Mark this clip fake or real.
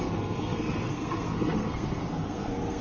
fake